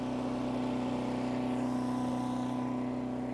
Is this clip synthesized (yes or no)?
no